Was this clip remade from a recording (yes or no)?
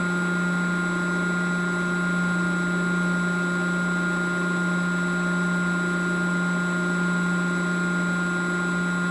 no